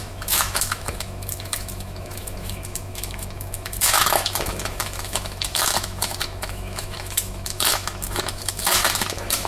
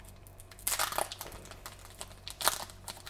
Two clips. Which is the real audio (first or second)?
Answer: second